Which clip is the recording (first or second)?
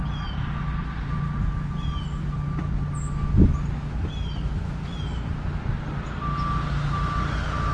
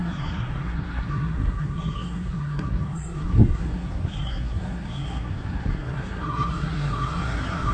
first